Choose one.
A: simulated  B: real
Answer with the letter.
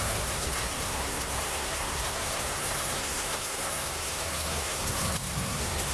A